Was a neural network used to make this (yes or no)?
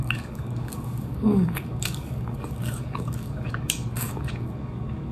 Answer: yes